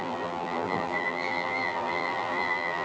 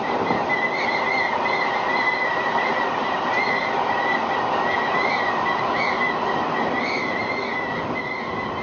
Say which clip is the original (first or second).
second